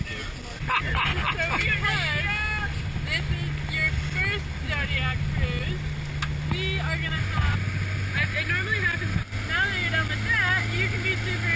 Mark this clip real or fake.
real